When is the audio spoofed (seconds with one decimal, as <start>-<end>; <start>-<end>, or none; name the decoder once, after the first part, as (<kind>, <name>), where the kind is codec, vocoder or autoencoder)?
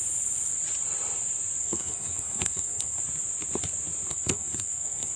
1.6-3.0 (codec, SNAC); 4.1-5.2